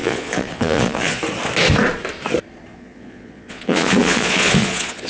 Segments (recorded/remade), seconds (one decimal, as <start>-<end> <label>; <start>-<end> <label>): 0.0-1.2 remade; 1.2-2.7 recorded; 2.7-5.1 remade